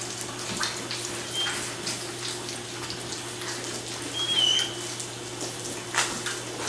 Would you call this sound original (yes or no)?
yes